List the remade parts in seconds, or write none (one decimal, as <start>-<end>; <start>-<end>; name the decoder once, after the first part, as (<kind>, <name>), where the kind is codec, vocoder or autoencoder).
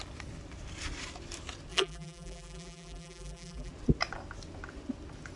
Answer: 1.7-3.7 (vocoder, BigVGAN v2)